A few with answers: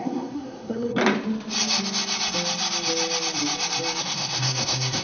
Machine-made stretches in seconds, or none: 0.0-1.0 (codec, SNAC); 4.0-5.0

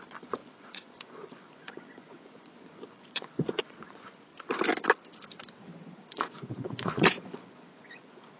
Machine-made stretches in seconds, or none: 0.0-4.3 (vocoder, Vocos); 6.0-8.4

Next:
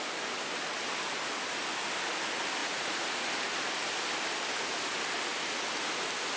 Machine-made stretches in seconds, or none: 2.6-3.3 (vocoder, Vocos)